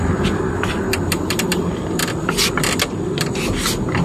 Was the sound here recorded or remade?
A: recorded